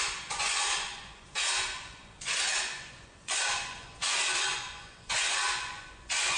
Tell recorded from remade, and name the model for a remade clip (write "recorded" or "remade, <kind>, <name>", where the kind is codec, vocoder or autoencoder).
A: remade, vocoder, Vocos